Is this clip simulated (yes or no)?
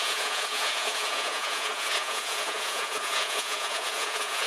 yes